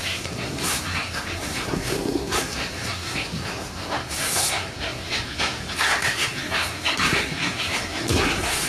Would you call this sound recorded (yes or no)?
no